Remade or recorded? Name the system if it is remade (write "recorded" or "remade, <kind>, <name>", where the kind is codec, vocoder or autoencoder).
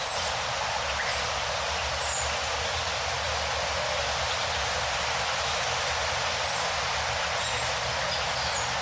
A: recorded